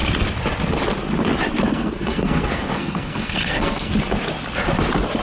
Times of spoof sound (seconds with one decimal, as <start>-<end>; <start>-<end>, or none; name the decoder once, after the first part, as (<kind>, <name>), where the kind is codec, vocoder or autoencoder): 1.7-3.9 (codec, SNAC)